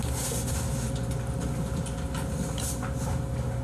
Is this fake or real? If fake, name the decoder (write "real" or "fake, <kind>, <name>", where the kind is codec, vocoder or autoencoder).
real